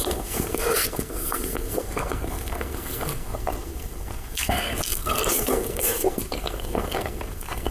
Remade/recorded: remade